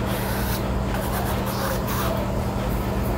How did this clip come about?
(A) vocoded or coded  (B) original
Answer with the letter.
B